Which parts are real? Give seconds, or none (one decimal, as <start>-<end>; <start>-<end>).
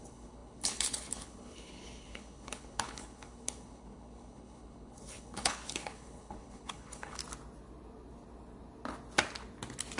7.2-10.0